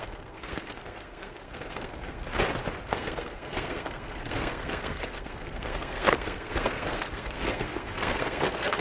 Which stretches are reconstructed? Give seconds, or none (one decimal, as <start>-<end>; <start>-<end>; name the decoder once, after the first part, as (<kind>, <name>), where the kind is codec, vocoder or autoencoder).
0.0-2.2 (codec, SNAC); 2.8-8.8